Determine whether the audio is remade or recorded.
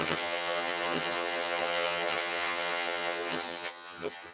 remade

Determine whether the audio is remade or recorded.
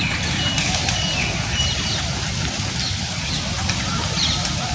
recorded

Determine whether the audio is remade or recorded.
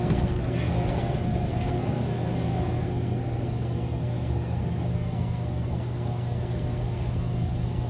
remade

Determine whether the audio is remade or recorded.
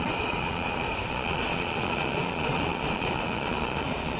remade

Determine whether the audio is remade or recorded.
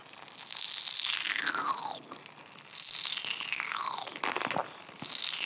recorded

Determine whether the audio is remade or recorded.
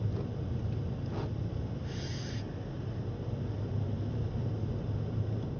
recorded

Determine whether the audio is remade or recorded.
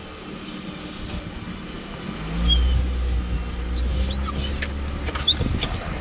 recorded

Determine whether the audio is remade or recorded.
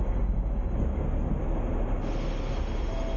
recorded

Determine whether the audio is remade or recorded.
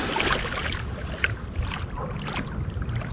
recorded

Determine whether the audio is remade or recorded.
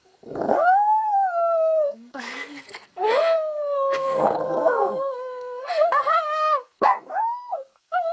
remade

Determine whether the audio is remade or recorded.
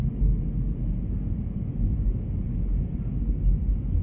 recorded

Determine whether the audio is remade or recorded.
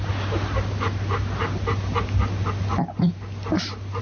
recorded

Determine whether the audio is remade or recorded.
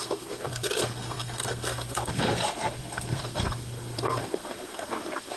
remade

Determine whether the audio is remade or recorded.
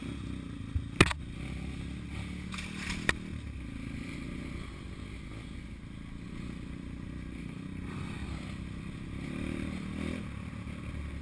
recorded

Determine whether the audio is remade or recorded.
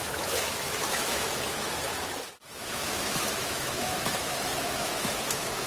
remade